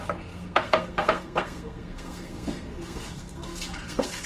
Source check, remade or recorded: remade